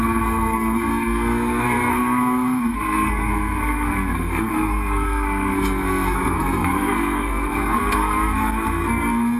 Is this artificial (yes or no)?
yes